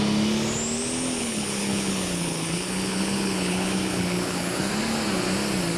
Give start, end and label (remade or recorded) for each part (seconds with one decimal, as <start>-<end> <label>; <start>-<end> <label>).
0.0-1.2 recorded; 1.2-4.7 remade; 4.7-5.8 recorded